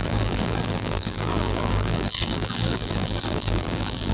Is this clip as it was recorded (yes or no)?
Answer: no